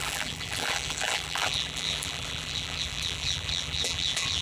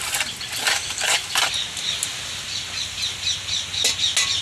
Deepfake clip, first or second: first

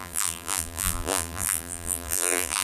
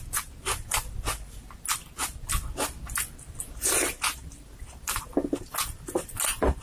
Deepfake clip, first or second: first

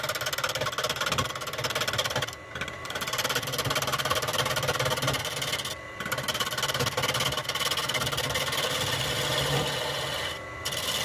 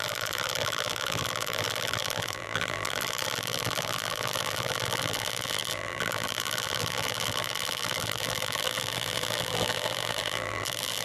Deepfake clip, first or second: second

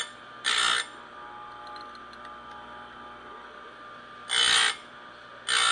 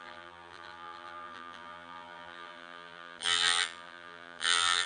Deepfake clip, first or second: second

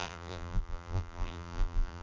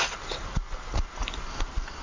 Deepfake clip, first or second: first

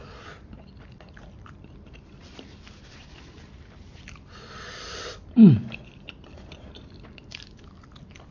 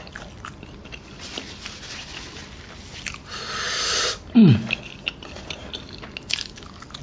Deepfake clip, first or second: first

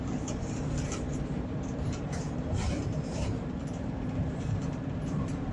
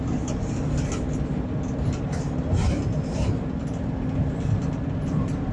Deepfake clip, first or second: first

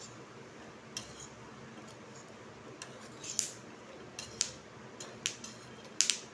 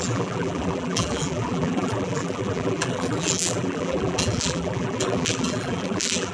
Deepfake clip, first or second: second